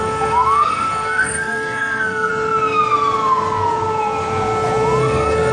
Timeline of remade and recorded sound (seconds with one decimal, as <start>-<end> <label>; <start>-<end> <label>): 0.0-2.3 remade; 2.3-5.0 recorded; 5.0-5.5 remade